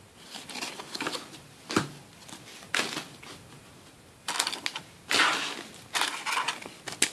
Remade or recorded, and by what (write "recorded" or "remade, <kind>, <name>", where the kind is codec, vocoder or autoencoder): recorded